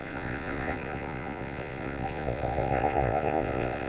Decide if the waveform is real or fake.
fake